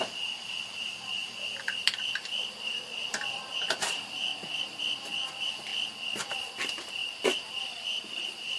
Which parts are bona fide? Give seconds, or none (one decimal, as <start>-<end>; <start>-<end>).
1.2-3.2; 4.3-5.3; 5.7-6.3; 7.0-7.5